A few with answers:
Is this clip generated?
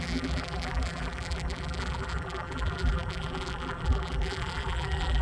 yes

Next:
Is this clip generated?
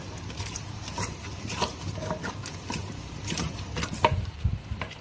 yes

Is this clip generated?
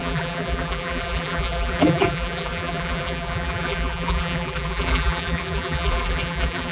yes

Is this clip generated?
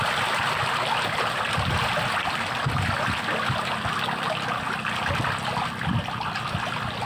no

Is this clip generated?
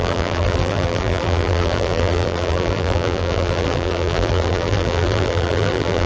yes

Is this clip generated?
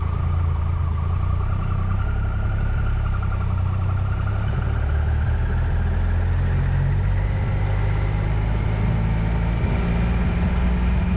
no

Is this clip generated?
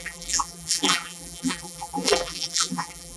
yes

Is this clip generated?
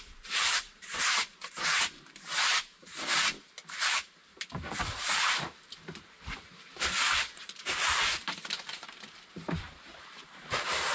yes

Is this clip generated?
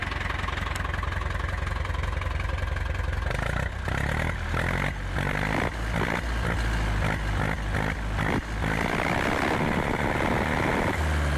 no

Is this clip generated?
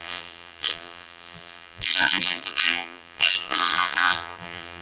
yes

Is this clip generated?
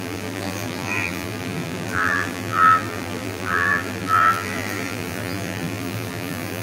yes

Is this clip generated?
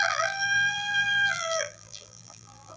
yes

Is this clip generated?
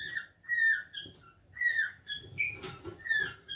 no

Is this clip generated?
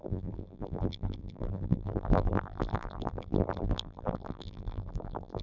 yes